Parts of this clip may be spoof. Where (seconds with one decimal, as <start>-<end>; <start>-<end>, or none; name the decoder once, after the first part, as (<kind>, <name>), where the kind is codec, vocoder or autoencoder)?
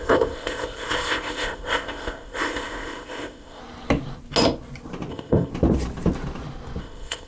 0.0-3.6 (codec, ZipCodec); 5.1-5.5; 6.8-7.3